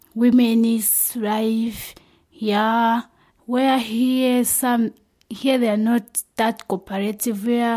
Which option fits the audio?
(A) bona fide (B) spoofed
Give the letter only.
A